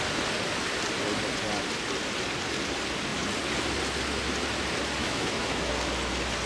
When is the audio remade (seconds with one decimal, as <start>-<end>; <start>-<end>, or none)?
5.0-5.7